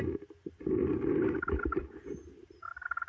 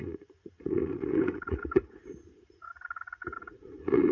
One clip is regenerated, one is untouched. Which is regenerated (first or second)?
second